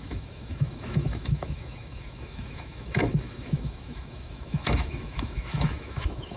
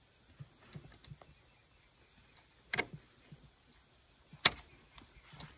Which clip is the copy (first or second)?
first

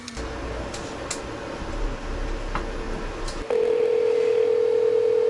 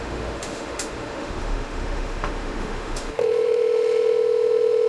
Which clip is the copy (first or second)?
second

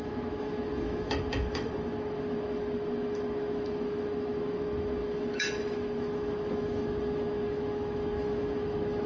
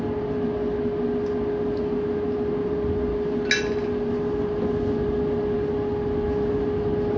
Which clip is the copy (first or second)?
first